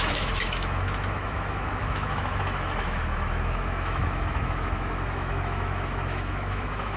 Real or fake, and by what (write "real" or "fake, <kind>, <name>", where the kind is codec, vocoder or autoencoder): fake, autoencoder, DAC-VAE